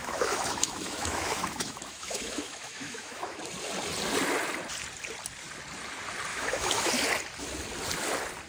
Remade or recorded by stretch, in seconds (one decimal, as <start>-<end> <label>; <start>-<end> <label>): 0.0-3.4 remade; 3.4-6.3 recorded; 6.3-6.9 remade; 6.9-8.5 recorded